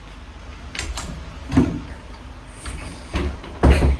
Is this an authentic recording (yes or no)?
yes